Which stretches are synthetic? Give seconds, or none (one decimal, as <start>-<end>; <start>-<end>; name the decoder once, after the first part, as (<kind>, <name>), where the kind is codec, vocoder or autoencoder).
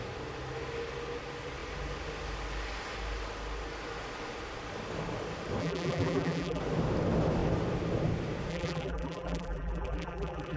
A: 5.6-6.6 (vocoder, BigVGAN v2); 8.5-10.6